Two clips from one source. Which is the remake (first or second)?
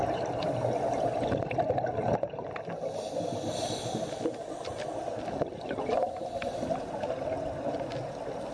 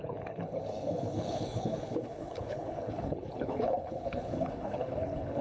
second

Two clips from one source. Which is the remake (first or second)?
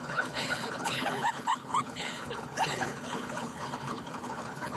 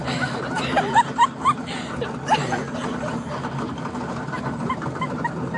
first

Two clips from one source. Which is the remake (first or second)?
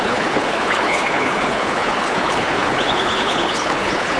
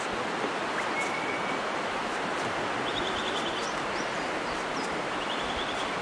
first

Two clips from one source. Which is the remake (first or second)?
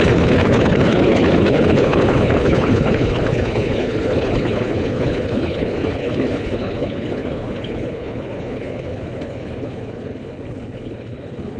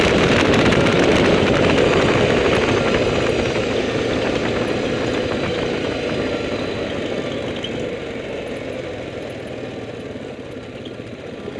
first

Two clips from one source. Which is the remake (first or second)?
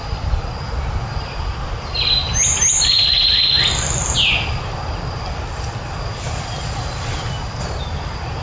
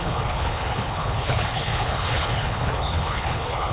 second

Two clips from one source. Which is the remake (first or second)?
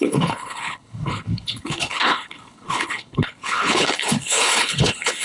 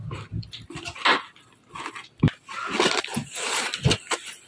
first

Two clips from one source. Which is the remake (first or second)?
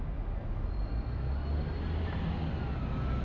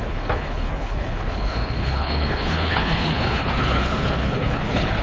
second